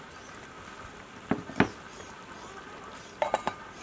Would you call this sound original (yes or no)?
yes